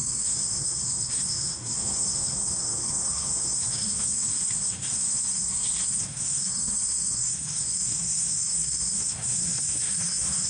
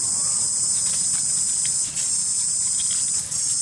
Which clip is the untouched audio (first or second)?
second